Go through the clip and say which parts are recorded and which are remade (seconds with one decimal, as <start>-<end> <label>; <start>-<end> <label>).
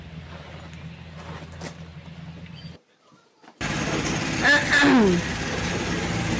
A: 0.0-6.4 recorded